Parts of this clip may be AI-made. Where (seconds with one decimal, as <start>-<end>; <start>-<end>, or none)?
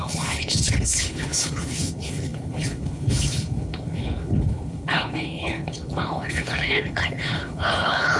0.0-8.2